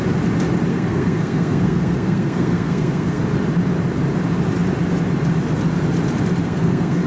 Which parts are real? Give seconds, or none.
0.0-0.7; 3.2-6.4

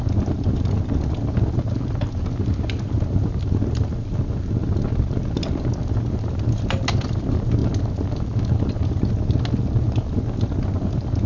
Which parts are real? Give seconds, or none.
0.0-11.3

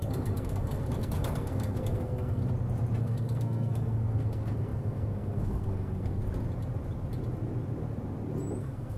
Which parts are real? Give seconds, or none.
2.4-3.0; 6.2-8.6

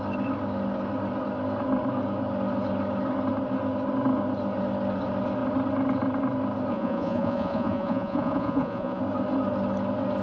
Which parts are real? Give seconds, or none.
0.0-6.7; 9.0-10.2